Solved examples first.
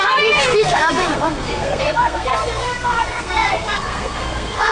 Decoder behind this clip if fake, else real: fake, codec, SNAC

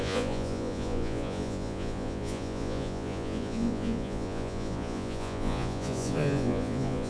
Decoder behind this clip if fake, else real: fake, vocoder, Vocos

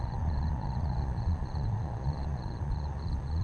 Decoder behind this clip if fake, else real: fake, vocoder, Vocos